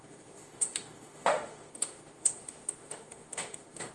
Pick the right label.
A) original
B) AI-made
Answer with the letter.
B